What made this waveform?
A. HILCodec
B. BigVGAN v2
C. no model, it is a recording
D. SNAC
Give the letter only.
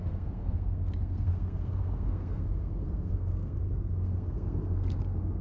D